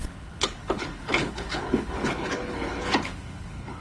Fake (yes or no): yes